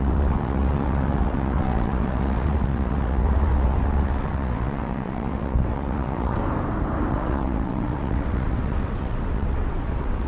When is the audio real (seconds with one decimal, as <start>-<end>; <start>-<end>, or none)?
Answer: 6.4-7.1